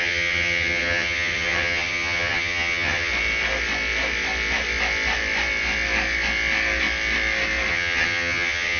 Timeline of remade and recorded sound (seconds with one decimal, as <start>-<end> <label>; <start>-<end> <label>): 0.0-3.1 remade; 3.1-7.7 recorded; 7.7-8.8 remade